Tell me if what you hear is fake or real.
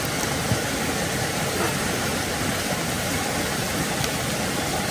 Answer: real